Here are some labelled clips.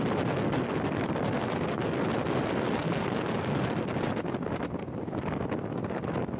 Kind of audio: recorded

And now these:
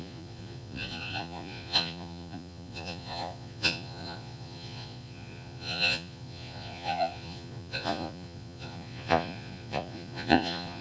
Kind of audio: remade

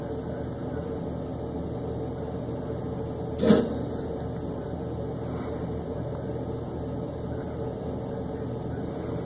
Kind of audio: recorded